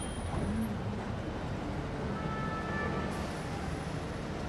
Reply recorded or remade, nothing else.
recorded